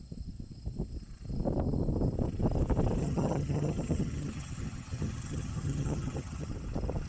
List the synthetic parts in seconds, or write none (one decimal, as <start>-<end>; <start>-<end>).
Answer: 3.0-6.5